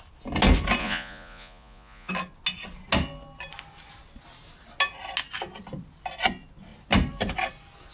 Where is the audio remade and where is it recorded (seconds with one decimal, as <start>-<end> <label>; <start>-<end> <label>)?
0.0-0.8 recorded; 0.8-2.1 remade; 2.1-7.9 recorded